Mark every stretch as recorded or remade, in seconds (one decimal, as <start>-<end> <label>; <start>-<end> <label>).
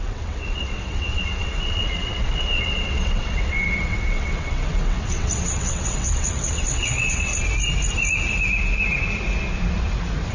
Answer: 0.0-7.3 remade; 7.3-10.3 recorded